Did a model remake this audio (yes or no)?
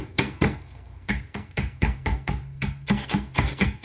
yes